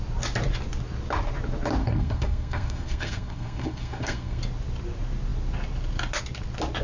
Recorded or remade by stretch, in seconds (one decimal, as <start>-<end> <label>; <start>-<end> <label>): 0.0-1.8 recorded; 1.8-4.4 remade; 4.4-6.8 recorded